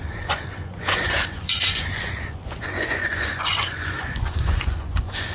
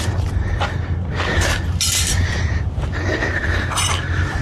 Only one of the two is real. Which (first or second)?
second